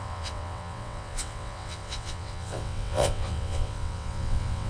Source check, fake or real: fake